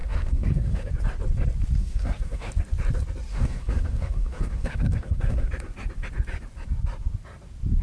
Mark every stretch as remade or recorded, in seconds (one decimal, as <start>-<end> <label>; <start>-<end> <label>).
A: 0.0-0.9 remade; 0.9-1.8 recorded; 1.8-2.5 remade; 2.5-3.3 recorded; 3.3-5.5 remade; 5.5-7.8 recorded